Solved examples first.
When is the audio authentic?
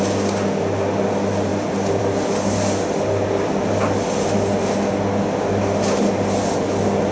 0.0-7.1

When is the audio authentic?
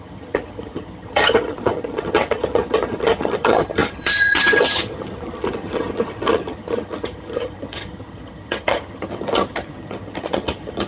none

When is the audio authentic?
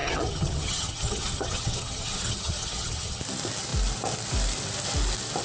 3.2-5.4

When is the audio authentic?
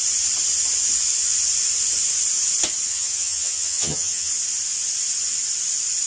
0.0-2.9; 4.3-6.1